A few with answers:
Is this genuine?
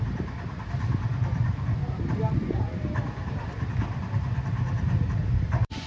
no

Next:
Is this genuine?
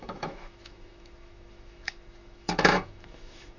no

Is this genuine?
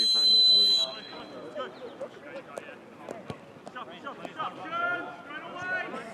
yes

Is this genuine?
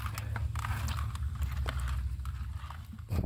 yes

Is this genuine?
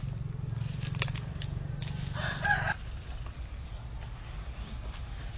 yes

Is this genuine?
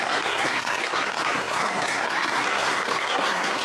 no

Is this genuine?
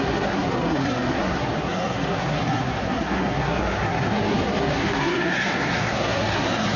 no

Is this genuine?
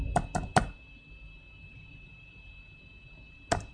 yes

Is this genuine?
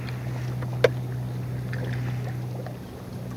yes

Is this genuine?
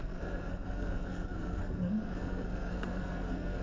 no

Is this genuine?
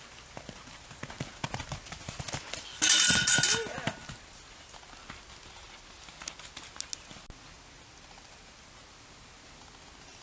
yes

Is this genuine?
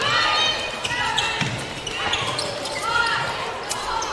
yes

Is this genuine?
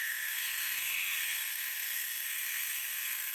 no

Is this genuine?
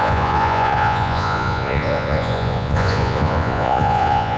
no